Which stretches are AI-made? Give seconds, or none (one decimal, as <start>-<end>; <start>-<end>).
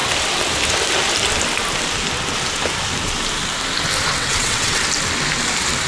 4.1-4.8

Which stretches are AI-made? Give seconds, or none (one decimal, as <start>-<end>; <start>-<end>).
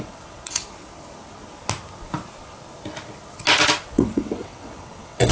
0.0-0.6; 3.8-5.3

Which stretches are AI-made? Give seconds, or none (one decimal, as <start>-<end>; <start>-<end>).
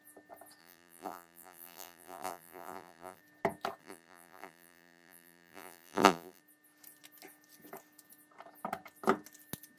0.6-3.2; 3.8-6.4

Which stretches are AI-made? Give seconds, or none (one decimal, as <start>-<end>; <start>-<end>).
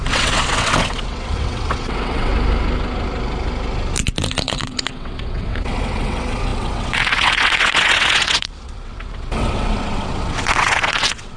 0.0-2.3; 4.4-11.4